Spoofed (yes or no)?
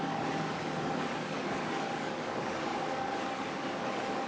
yes